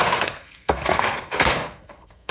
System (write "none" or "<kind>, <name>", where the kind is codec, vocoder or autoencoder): codec, SNAC